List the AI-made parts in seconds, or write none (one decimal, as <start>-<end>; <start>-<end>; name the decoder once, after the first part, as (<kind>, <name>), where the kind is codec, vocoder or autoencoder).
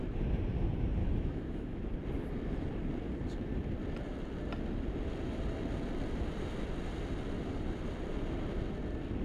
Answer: 1.0-1.8 (autoencoder, DAC-VAE)